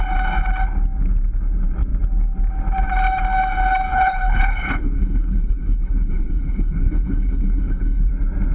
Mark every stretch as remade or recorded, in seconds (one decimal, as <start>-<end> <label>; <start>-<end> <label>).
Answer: 0.0-3.9 recorded; 3.9-8.1 remade; 8.1-8.5 recorded